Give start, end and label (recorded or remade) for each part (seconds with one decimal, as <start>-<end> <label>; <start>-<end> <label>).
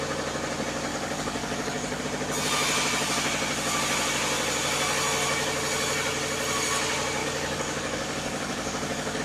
0.0-0.9 recorded; 0.9-2.0 remade; 2.0-7.2 recorded; 7.2-9.2 remade